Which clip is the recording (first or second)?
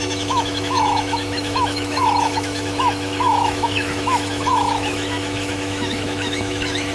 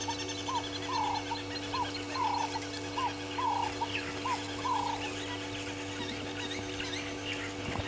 second